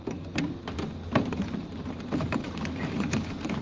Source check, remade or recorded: remade